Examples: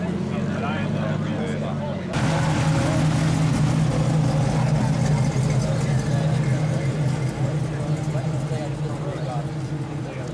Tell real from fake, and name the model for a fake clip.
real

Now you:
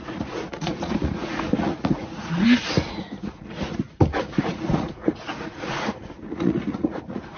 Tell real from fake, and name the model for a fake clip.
fake, vocoder, Vocos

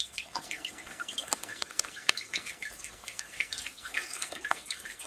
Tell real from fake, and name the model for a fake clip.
fake, codec, SNAC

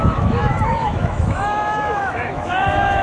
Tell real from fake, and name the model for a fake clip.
fake, autoencoder, DAC-VAE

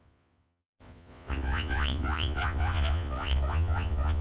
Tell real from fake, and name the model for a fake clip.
fake, vocoder, Vocos